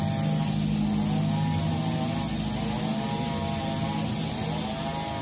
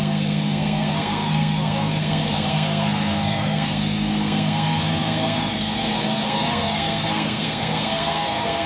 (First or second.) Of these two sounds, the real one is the first